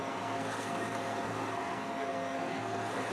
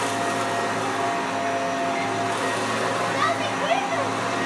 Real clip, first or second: second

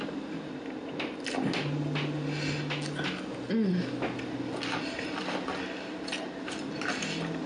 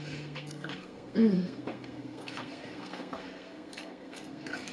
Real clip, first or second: first